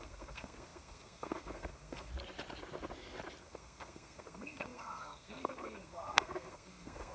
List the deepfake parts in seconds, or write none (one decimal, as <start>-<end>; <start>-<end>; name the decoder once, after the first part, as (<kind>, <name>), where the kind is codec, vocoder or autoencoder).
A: 0.0-2.1 (codec, SNAC); 3.4-7.1